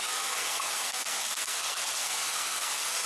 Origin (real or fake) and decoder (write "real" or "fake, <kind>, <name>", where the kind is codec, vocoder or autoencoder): fake, codec, SNAC